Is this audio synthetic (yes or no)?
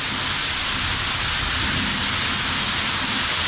no